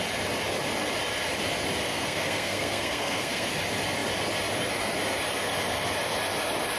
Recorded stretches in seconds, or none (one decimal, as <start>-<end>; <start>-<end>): 0.0-1.9; 3.5-6.8